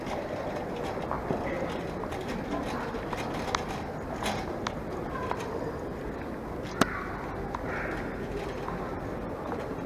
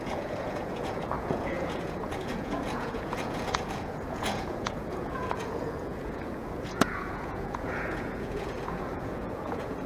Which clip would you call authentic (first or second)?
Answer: first